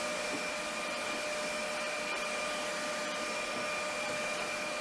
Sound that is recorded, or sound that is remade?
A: recorded